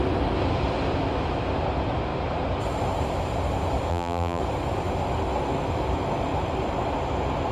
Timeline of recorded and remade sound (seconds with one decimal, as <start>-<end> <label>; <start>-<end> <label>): 0.0-3.9 recorded; 3.9-4.4 remade; 4.4-7.5 recorded